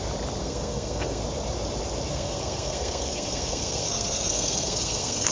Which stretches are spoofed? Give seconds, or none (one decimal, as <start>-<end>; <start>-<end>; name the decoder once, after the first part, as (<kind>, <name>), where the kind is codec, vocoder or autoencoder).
0.4-1.2 (codec, SNAC); 2.1-5.3